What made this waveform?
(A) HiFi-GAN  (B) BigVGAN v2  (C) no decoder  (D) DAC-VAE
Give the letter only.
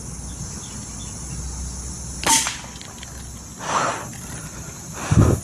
C